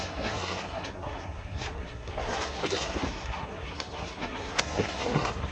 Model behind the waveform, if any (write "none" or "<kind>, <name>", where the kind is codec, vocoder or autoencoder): codec, SNAC